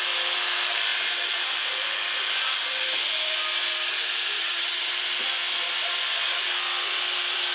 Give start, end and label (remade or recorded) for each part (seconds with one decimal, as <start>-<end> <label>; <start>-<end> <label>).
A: 0.0-4.4 recorded; 4.4-4.9 remade; 4.9-7.5 recorded